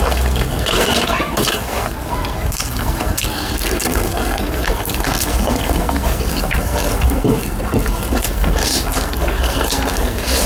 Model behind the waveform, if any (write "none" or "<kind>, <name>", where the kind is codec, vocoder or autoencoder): codec, SNAC